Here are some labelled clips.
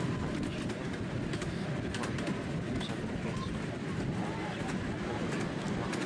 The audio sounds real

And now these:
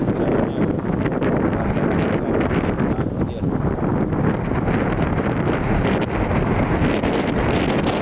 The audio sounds real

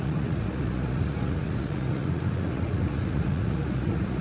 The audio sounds fake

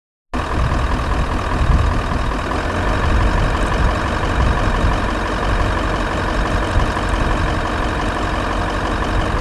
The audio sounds real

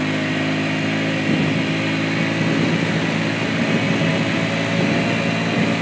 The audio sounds real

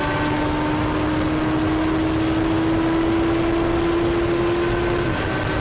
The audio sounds real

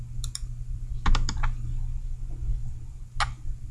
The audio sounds real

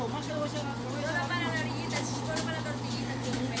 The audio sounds real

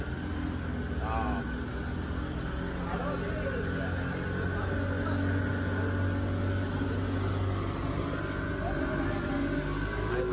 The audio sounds real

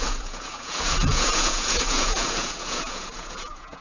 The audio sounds fake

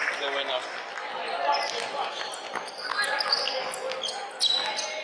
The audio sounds real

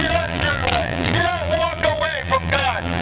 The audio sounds fake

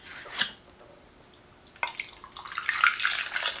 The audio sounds real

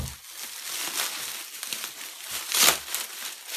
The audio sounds real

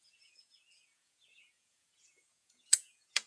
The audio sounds fake